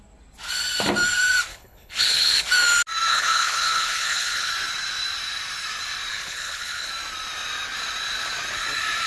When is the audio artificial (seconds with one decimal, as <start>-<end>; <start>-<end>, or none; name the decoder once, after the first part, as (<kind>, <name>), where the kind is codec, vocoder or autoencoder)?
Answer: 1.5-2.5 (codec, HILCodec); 3.1-4.5; 6.1-6.9